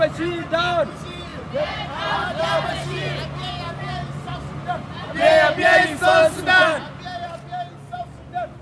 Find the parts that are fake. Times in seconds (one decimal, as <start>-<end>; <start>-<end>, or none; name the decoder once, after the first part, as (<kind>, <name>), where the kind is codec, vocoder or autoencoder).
none

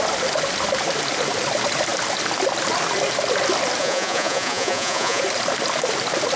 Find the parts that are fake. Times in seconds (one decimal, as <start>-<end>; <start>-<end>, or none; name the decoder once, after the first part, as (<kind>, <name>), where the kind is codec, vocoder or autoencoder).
3.8-5.2 (vocoder, Vocos)

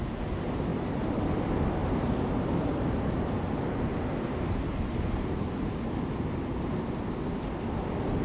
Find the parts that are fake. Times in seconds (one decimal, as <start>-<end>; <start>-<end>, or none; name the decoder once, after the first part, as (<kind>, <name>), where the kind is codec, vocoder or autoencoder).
0.7-1.3 (vocoder, BigVGAN v2); 1.8-5.8

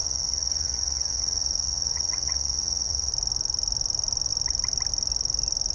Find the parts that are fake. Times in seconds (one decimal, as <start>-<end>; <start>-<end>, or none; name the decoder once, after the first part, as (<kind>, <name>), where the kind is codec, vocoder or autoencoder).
0.0-3.1 (vocoder, Vocos)

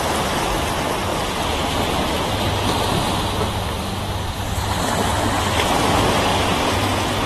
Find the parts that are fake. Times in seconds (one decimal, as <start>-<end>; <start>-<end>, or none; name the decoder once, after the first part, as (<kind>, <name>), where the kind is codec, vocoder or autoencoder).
none

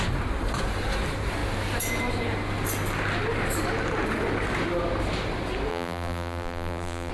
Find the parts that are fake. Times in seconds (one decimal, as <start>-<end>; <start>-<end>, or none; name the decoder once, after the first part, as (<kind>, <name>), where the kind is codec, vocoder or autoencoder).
5.7-7.1 (vocoder, BigVGAN v2)

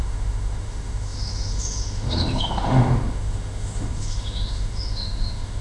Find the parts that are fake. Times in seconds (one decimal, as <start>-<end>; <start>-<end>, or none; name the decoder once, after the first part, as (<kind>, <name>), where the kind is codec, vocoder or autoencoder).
0.0-5.6 (autoencoder, DAC-VAE)